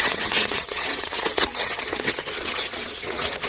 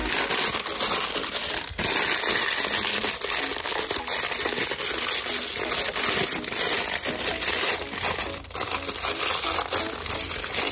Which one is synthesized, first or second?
first